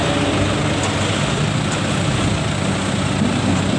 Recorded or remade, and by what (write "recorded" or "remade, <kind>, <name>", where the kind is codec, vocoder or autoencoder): recorded